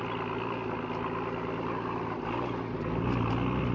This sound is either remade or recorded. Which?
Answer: recorded